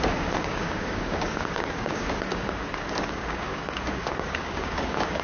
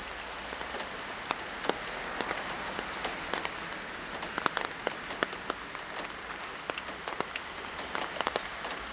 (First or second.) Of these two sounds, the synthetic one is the first